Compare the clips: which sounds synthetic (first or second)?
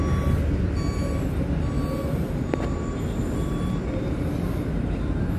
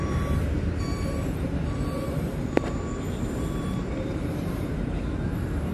second